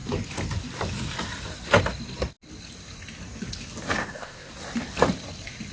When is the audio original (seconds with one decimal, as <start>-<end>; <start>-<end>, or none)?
0.0-4.0; 4.5-5.7